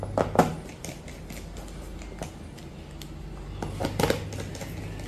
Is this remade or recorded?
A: recorded